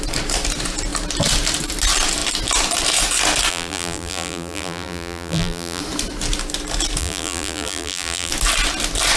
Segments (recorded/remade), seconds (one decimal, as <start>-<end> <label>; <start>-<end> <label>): 0.0-3.5 recorded; 3.5-5.8 remade; 5.8-7.0 recorded; 7.0-8.3 remade; 8.3-9.2 recorded